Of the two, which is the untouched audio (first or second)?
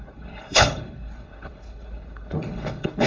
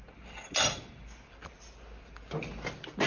second